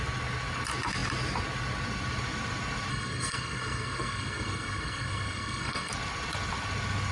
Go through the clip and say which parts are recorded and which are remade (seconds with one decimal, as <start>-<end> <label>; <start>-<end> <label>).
0.0-2.9 recorded; 2.9-5.9 remade; 5.9-7.1 recorded